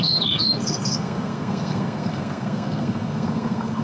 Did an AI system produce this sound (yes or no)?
yes